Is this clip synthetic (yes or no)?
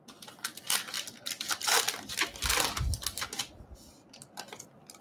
no